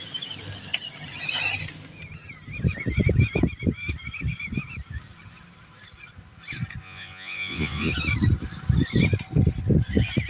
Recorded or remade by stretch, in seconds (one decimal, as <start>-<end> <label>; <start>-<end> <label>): 0.0-6.8 recorded; 6.8-7.9 remade; 7.9-10.3 recorded